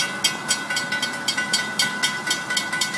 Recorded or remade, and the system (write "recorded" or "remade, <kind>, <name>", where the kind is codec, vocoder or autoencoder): recorded